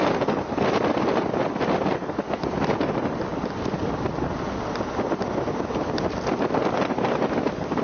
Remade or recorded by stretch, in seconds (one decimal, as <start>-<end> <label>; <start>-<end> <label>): 0.0-3.3 remade; 3.3-6.8 recorded; 6.8-7.8 remade